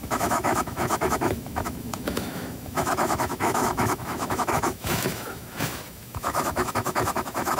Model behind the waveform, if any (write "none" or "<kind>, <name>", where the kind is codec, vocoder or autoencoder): autoencoder, DAC-VAE